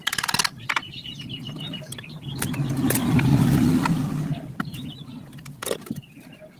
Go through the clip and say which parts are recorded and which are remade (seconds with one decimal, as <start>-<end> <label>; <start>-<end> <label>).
0.0-6.6 recorded

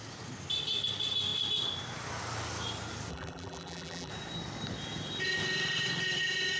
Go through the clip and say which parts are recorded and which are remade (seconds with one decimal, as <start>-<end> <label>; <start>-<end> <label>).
0.0-3.1 recorded; 3.1-4.1 remade; 4.1-6.6 recorded

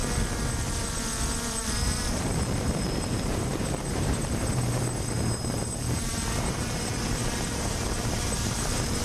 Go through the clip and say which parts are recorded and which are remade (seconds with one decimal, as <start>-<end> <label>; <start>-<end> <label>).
0.0-1.5 recorded; 1.5-9.0 remade

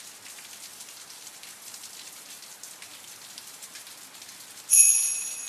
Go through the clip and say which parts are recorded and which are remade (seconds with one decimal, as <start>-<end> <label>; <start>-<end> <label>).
0.0-0.7 recorded; 0.7-2.4 remade; 2.4-2.9 recorded; 2.9-3.9 remade; 3.9-5.5 recorded

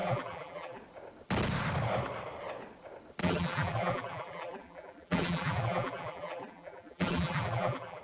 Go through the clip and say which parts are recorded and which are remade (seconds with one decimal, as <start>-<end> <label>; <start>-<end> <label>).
0.0-0.8 remade; 0.8-3.2 recorded; 3.2-8.0 remade

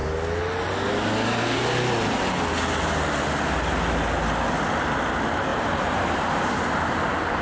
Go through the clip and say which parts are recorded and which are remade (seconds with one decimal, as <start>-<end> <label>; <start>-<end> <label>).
0.0-5.5 recorded; 5.5-6.4 remade; 6.4-7.4 recorded